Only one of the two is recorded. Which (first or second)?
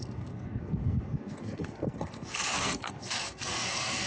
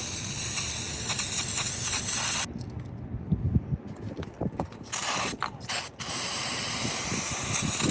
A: second